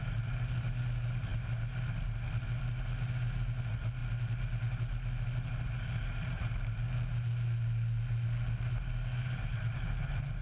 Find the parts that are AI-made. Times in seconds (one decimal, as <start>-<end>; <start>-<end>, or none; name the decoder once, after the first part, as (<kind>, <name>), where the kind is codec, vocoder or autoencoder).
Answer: none